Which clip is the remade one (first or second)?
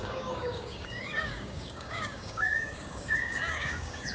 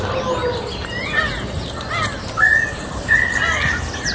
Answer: first